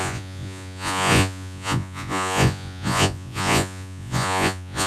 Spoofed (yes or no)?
yes